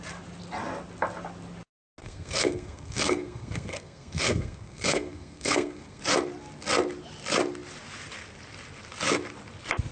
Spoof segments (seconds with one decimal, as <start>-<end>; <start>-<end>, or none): 2.0-6.0